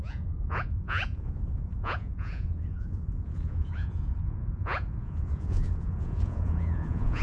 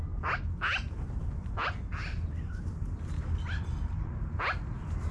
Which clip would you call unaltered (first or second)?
second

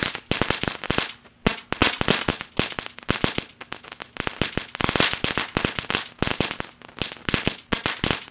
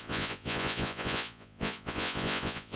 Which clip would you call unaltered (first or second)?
first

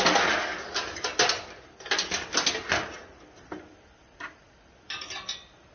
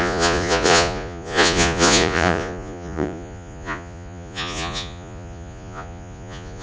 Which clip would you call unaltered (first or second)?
first